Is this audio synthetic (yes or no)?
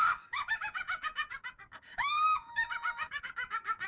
yes